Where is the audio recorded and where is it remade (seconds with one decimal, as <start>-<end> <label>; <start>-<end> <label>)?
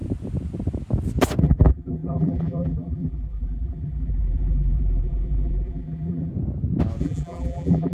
0.0-1.4 recorded; 1.4-6.3 remade; 6.3-7.0 recorded; 7.0-7.9 remade